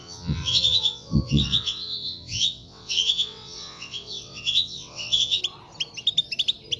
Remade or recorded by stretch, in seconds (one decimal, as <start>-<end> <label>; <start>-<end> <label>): 0.0-5.4 remade; 5.4-6.8 recorded